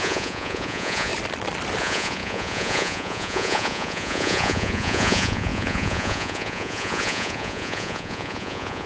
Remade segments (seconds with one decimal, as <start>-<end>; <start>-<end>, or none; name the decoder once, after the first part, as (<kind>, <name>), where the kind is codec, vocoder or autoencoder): 0.0-1.1 (vocoder, Vocos); 1.8-8.9

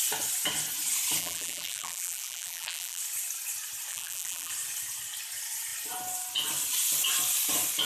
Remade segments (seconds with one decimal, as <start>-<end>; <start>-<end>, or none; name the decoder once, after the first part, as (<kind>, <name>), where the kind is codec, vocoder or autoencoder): 1.2-3.0 (vocoder, BigVGAN v2); 3.9-4.5